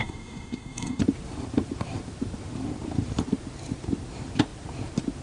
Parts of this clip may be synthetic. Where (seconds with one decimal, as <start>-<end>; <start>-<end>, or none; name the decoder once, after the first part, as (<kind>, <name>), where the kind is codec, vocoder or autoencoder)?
0.0-1.0 (codec, SNAC)